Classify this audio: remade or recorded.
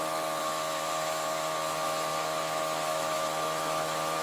remade